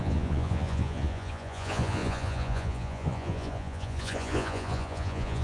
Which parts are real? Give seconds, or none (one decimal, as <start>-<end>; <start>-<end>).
none